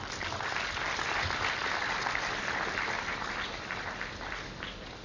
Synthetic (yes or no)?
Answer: no